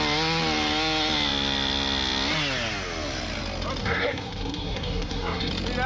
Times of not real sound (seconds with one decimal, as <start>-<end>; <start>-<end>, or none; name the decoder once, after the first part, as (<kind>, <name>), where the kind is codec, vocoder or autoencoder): 3.8-5.5 (codec, SNAC)